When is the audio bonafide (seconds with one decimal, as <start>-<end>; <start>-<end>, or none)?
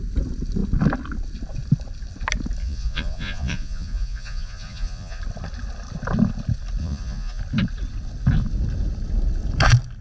0.0-2.6; 5.2-6.8; 7.4-10.0